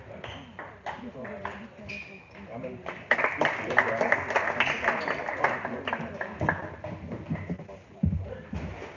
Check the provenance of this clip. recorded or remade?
recorded